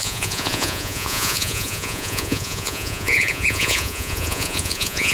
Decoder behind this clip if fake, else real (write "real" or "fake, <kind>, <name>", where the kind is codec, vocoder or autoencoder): fake, vocoder, Vocos